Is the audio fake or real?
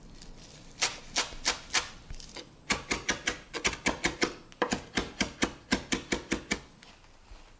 real